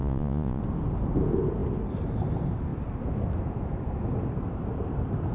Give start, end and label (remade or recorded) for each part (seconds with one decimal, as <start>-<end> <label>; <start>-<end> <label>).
0.0-0.6 remade; 0.6-5.3 recorded